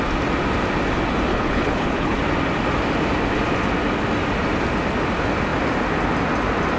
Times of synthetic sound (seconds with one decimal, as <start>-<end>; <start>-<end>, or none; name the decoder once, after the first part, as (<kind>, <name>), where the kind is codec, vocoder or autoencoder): 1.3-2.2 (codec, HILCodec)